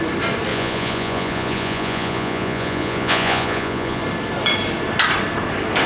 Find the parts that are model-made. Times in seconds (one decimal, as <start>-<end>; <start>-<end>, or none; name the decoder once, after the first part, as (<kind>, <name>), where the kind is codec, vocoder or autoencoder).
0.5-4.0 (vocoder, Vocos)